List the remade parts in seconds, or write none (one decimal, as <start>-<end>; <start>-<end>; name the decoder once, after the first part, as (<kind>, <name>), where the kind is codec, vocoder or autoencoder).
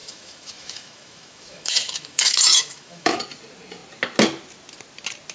0.0-3.2 (autoencoder, DAC-VAE)